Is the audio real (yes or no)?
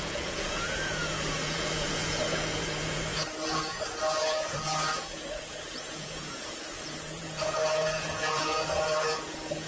no